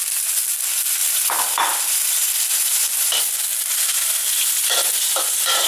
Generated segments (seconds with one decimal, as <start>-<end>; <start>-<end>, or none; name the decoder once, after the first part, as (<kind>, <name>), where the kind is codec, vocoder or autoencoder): 1.0-1.8 (vocoder, BigVGAN v2)